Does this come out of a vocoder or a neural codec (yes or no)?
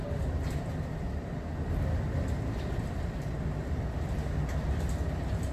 no